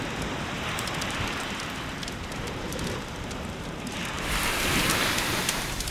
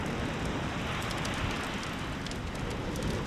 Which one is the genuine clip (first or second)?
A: second